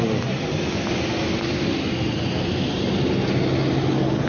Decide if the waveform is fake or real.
real